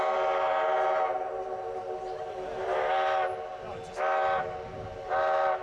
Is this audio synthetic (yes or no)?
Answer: no